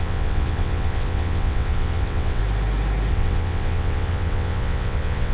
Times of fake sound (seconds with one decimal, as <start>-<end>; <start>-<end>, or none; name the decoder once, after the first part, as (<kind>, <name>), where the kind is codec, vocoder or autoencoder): 0.0-2.4 (vocoder, WaveNeXt); 3.1-5.3